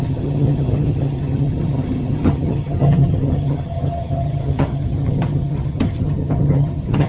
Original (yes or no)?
no